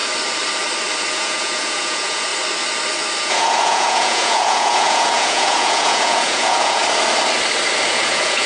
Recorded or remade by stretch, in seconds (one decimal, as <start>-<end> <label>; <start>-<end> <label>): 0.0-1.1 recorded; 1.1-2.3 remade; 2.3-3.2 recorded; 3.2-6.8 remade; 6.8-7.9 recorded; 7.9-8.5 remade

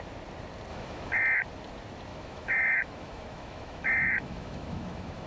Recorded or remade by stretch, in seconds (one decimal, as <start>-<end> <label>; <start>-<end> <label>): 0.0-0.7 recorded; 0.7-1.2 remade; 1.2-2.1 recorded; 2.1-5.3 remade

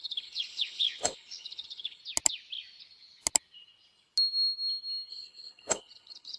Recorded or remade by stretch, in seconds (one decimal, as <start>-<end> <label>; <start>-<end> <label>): 0.0-2.0 remade; 2.0-5.1 recorded; 5.1-6.4 remade

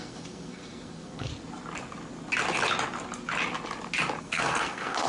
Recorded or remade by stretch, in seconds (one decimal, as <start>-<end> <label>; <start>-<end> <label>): 0.0-1.3 remade; 1.3-4.2 recorded; 4.2-5.1 remade